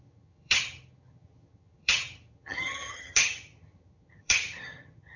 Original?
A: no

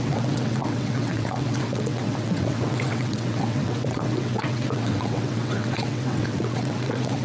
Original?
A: no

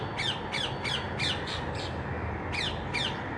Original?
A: yes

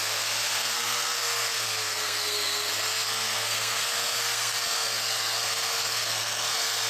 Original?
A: no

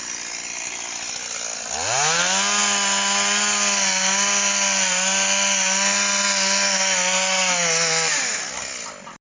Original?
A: yes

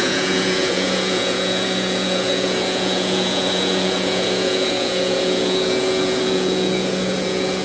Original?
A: no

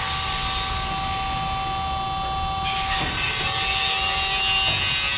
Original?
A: yes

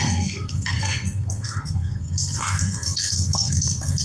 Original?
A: no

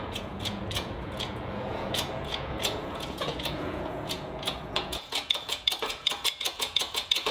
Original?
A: no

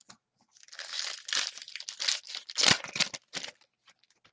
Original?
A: yes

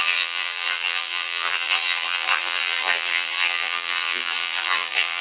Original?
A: no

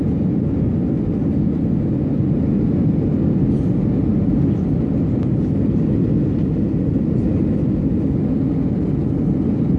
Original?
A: yes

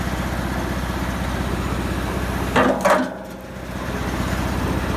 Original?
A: yes